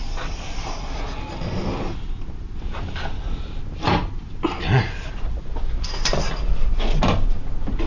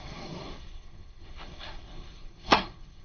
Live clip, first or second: first